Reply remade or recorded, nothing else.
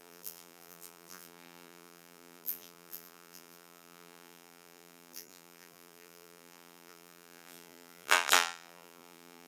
remade